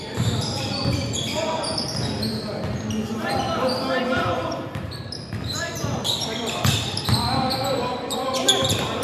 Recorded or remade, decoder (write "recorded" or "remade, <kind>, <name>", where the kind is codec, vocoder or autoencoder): remade, vocoder, BigVGAN v2